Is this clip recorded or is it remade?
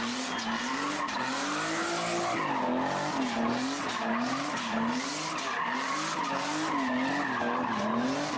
recorded